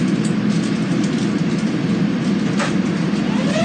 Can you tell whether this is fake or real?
real